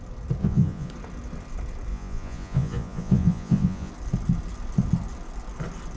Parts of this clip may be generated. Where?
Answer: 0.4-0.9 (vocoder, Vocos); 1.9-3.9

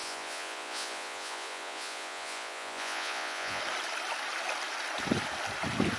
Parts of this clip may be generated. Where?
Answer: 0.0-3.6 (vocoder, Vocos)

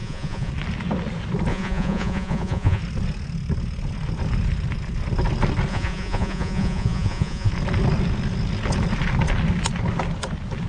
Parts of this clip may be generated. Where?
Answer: 0.0-0.5 (vocoder, Vocos); 1.5-2.8; 5.7-7.5

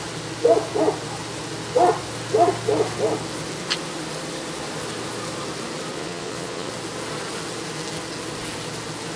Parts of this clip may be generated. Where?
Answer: 5.9-6.7 (vocoder, Vocos)

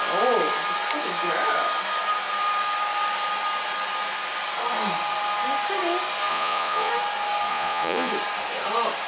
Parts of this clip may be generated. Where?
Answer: 6.3-6.9 (vocoder, Vocos); 7.5-8.1